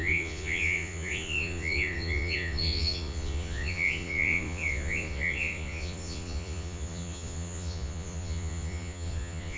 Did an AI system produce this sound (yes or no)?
yes